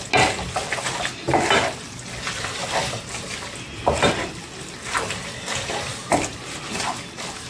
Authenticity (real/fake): real